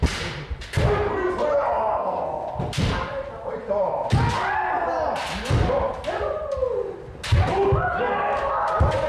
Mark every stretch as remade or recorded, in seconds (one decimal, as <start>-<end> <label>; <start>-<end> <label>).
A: 0.0-1.9 recorded; 1.9-2.5 remade; 2.5-9.1 recorded